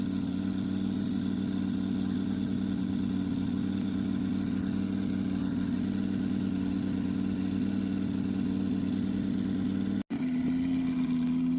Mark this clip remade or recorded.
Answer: recorded